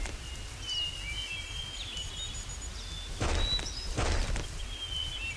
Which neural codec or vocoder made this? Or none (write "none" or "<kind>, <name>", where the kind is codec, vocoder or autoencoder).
none